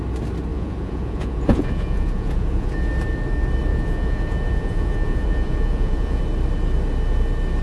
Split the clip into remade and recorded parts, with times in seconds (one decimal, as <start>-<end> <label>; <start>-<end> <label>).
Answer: 0.0-0.5 recorded; 0.5-2.9 remade; 2.9-3.7 recorded; 3.7-6.2 remade; 6.2-7.6 recorded